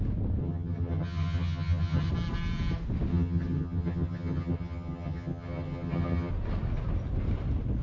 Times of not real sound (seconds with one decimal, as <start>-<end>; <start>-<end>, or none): 0.4-2.1; 3.1-6.3